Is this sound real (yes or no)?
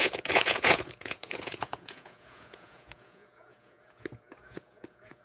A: no